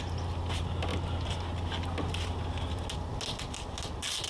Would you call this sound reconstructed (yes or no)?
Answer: no